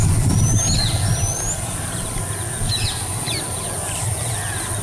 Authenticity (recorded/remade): recorded